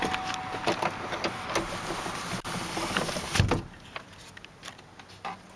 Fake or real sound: real